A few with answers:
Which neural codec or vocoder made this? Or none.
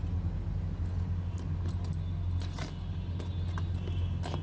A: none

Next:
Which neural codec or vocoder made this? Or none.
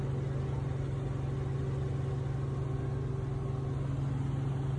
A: none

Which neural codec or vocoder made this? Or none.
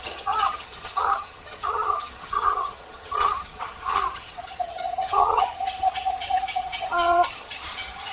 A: vocoder, HiFi-GAN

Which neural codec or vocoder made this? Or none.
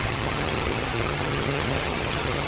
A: vocoder, HiFi-GAN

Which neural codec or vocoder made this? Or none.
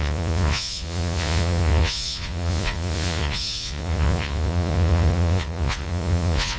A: vocoder, Vocos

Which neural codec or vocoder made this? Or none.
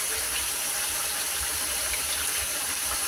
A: vocoder, BigVGAN v2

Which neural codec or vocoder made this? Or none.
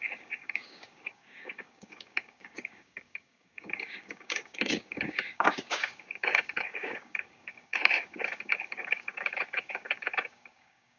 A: codec, DAC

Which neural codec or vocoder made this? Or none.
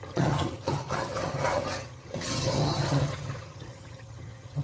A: vocoder, HiFi-GAN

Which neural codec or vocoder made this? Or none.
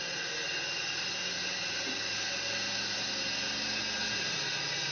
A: none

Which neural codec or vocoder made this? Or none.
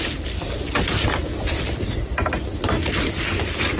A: none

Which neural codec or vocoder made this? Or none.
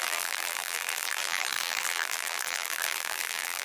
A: vocoder, BigVGAN v2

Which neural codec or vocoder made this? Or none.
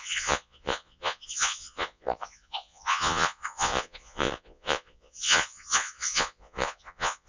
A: vocoder, Vocos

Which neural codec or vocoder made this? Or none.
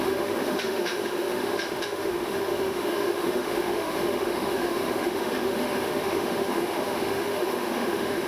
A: autoencoder, DAC-VAE